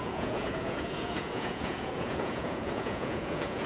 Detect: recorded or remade remade